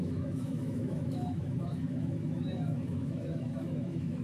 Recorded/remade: remade